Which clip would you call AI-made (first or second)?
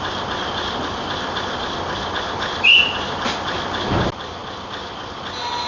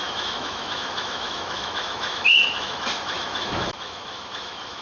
second